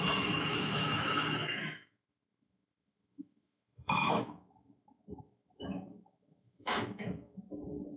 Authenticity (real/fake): fake